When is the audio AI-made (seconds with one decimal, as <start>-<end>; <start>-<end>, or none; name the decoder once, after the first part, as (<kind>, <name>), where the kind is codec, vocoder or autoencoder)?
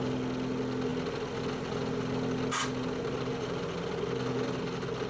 none